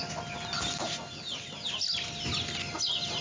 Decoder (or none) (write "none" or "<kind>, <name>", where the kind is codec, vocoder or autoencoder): none